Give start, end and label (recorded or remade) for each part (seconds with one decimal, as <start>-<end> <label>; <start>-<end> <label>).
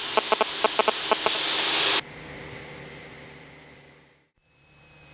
0.0-5.1 recorded